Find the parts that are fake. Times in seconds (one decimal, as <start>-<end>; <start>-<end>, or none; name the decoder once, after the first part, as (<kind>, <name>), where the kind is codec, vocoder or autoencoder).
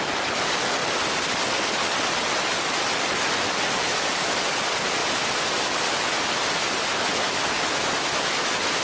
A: none